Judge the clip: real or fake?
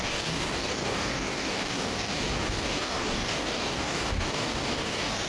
fake